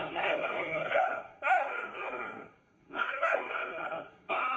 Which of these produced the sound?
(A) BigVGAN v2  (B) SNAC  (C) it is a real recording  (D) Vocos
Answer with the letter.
B